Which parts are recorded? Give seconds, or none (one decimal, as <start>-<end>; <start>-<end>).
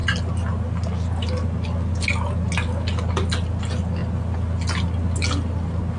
0.0-6.0